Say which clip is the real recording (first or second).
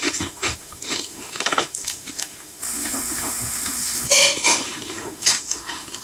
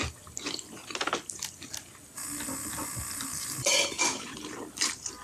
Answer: second